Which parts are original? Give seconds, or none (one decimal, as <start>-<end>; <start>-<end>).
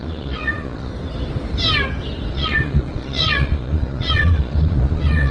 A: 0.9-2.3